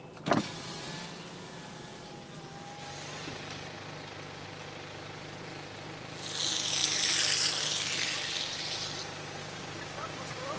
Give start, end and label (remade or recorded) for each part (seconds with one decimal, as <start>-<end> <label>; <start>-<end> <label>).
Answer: 0.0-9.4 recorded; 9.4-10.6 remade